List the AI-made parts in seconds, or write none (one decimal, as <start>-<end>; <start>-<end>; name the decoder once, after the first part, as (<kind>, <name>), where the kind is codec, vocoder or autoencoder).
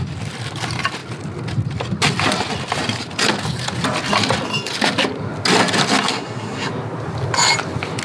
6.1-6.7 (codec, SNAC)